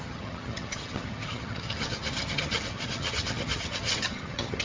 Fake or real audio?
fake